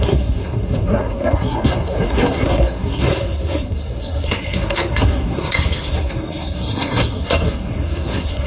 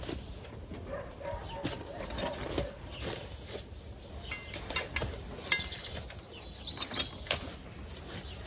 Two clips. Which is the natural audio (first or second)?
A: second